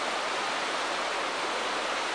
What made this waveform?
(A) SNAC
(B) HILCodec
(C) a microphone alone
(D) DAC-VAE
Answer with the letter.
C